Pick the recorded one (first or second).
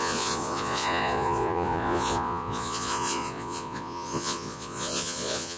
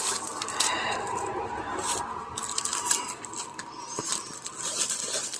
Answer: second